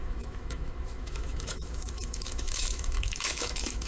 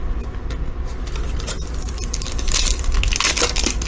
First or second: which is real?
second